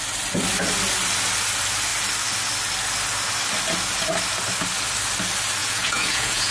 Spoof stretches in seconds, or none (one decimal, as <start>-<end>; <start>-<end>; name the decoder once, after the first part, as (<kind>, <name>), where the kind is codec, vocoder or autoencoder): 5.6-6.5 (vocoder, Vocos)